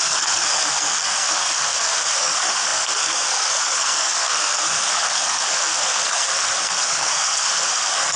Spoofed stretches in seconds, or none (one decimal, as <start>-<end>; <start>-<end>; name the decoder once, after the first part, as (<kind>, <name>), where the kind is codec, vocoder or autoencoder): 0.0-8.2 (codec, SNAC)